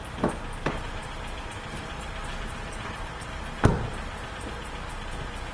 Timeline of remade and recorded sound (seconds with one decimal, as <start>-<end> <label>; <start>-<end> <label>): 0.0-1.0 recorded; 1.0-4.3 remade; 4.3-5.5 recorded